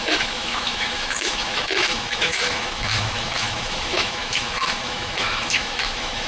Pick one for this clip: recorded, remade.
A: remade